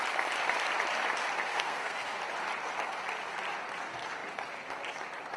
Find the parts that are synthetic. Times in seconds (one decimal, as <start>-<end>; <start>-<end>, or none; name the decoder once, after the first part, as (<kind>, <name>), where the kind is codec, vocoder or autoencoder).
1.5-2.2 (codec, SNAC)